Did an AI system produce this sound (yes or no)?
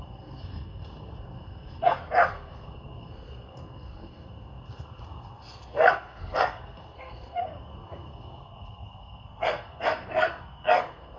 yes